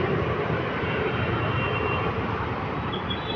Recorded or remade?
recorded